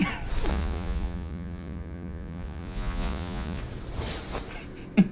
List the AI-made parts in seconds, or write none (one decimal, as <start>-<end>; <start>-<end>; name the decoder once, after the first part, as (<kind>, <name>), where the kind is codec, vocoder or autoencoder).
0.5-3.6 (vocoder, Vocos)